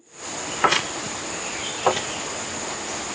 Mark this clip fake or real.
real